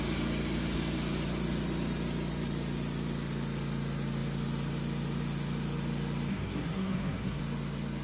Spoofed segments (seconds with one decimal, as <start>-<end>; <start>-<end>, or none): 6.3-7.4